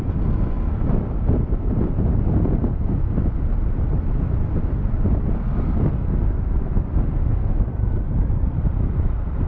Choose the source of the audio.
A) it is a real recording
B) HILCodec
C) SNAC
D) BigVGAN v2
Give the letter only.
A